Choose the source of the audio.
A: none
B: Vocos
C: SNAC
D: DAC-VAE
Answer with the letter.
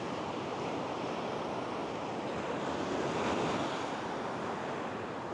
A